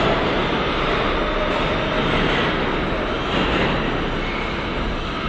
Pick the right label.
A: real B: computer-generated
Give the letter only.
A